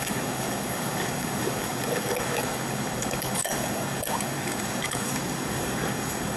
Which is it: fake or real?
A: fake